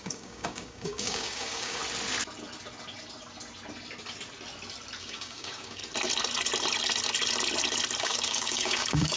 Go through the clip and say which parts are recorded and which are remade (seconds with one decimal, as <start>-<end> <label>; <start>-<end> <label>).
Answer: 0.0-1.8 remade; 1.8-5.0 recorded; 5.0-5.8 remade; 5.8-8.0 recorded; 8.0-9.2 remade